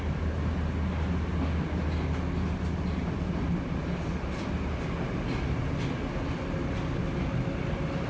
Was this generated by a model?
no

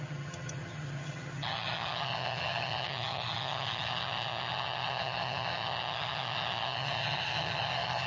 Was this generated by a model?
yes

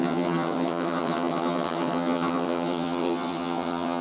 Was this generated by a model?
yes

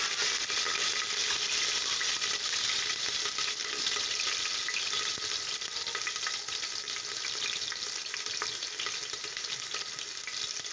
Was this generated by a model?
no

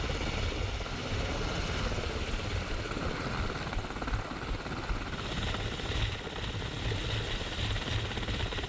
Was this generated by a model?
no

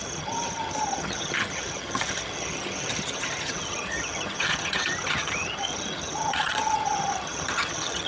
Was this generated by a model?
yes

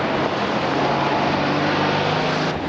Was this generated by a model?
no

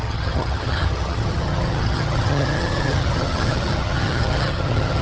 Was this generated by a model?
yes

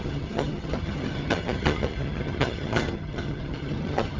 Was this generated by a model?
yes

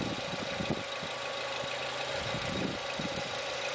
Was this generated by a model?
no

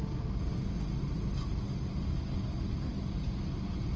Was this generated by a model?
no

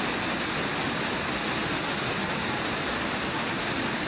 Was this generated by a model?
no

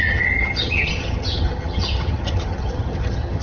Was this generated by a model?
yes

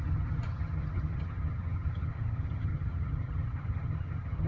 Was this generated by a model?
yes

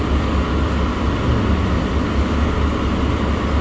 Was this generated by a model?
no